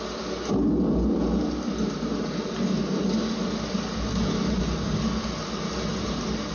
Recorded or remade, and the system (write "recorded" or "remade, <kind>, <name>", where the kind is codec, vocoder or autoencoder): recorded